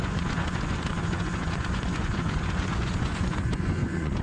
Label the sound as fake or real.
fake